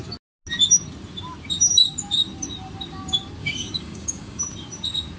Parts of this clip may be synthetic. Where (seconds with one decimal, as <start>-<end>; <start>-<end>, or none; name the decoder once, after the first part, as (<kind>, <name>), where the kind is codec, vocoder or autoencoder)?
3.4-4.4 (codec, DAC)